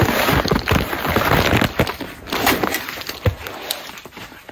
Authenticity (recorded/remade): recorded